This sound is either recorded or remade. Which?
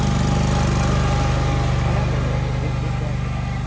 recorded